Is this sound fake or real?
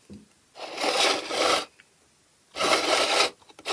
real